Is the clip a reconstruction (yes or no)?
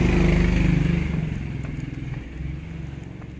no